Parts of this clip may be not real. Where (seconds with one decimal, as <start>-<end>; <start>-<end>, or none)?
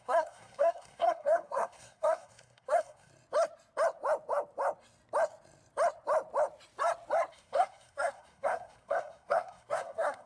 0.0-3.1; 7.3-10.3